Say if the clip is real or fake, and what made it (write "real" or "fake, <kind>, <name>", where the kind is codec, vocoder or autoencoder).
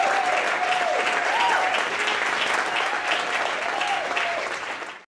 real